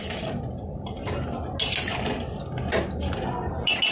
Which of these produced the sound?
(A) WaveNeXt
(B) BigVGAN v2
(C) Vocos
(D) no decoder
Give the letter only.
D